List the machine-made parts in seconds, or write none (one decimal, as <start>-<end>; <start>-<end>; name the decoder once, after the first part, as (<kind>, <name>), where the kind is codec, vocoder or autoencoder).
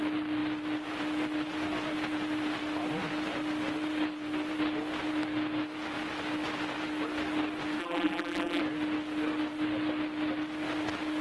7.8-8.6 (vocoder, BigVGAN v2)